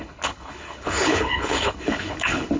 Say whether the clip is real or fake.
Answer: fake